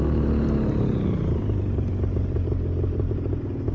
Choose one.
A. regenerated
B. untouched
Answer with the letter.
B